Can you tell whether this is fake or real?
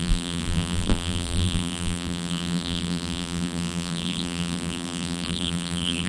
fake